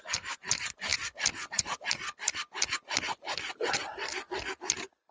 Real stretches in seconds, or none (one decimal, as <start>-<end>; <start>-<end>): 0.9-1.5; 2.0-5.1